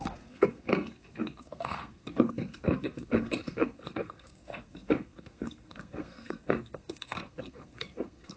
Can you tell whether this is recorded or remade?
remade